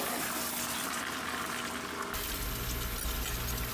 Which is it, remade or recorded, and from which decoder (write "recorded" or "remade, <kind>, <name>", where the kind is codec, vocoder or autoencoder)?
recorded